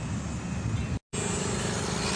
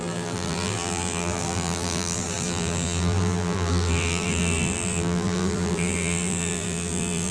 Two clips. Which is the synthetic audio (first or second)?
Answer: second